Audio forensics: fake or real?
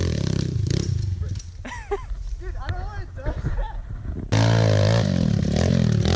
real